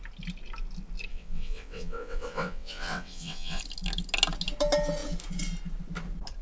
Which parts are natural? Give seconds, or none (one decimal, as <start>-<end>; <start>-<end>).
0.0-1.1; 3.6-6.4